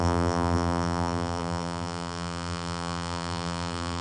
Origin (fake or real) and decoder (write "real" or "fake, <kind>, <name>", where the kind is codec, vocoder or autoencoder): fake, vocoder, BigVGAN v2